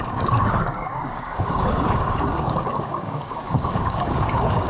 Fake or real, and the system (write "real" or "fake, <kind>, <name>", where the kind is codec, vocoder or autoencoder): fake, codec, DAC